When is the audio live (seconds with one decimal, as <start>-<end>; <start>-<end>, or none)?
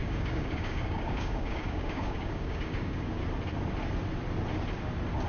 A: 3.2-5.3